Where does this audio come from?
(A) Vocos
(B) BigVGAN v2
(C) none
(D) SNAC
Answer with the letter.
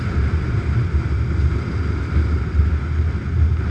C